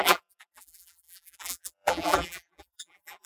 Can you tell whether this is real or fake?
fake